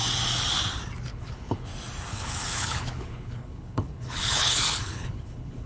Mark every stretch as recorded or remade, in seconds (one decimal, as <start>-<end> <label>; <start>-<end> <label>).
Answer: 0.0-1.1 recorded; 1.1-1.7 remade; 1.7-2.1 recorded; 2.1-5.7 remade